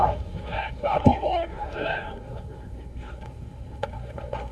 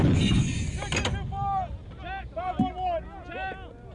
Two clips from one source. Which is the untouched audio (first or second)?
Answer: second